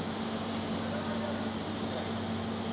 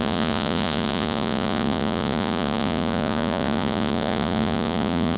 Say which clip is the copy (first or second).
second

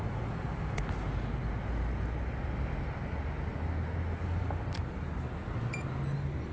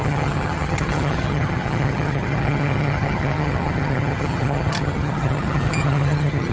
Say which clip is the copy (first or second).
second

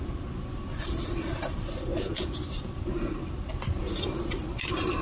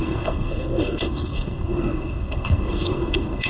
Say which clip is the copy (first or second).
second